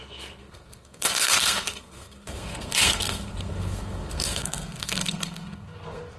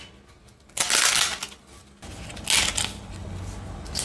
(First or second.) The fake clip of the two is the first